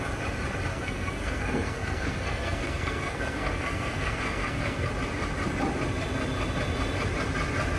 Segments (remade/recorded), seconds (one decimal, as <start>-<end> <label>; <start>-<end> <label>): 0.0-0.7 recorded; 0.7-4.9 remade; 4.9-7.8 recorded